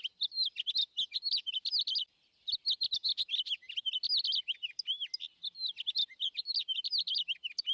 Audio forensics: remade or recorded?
recorded